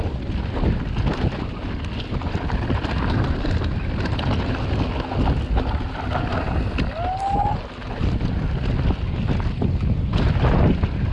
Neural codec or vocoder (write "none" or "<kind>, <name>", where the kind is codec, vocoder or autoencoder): none